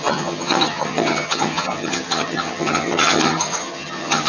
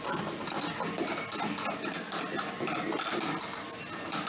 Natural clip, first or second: second